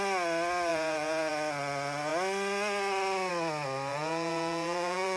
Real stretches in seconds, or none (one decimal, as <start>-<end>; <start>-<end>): 0.0-0.7; 1.3-3.9